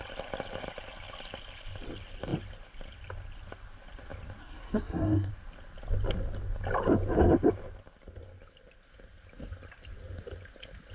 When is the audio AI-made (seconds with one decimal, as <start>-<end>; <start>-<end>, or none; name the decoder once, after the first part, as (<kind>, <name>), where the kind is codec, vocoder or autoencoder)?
4.4-5.3 (codec, SNAC)